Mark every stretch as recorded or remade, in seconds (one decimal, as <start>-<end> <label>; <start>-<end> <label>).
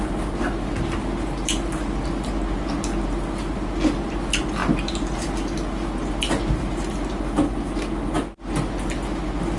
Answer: 0.0-9.6 recorded